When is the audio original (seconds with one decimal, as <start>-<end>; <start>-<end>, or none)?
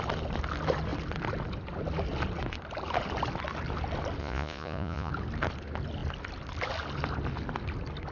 0.0-4.2; 5.1-8.1